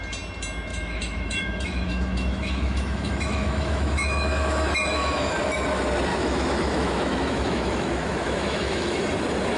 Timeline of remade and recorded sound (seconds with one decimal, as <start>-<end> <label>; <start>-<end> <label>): 0.0-0.7 recorded; 0.7-5.3 remade; 5.3-6.1 recorded; 6.1-9.0 remade; 9.0-9.6 recorded